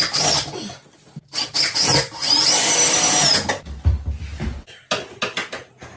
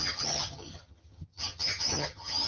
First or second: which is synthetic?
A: second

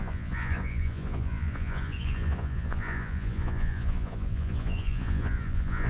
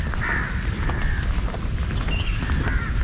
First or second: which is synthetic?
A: first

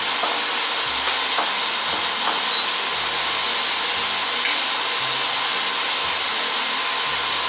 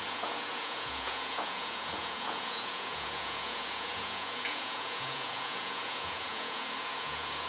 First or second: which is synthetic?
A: second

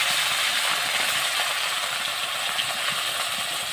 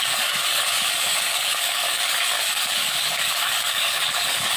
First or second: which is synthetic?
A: second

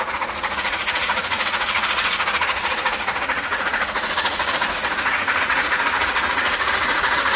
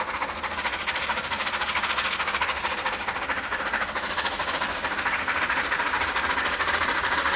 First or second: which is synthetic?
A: first